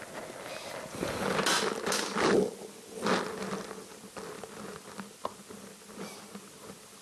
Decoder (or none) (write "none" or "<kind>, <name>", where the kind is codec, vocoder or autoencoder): none